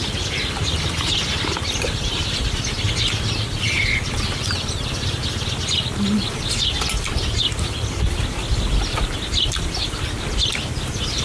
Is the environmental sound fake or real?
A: real